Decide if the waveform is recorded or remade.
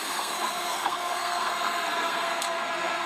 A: remade